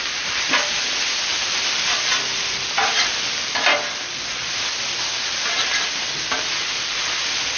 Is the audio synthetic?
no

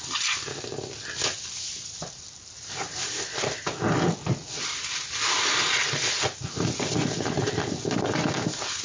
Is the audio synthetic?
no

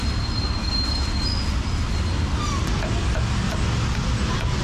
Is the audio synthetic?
no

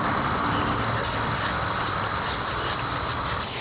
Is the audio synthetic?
no